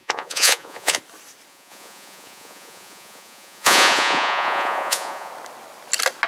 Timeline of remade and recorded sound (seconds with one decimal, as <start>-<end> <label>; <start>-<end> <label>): 0.0-1.0 remade; 1.0-1.5 recorded; 1.5-5.3 remade; 5.3-6.3 recorded